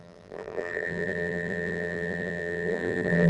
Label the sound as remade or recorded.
remade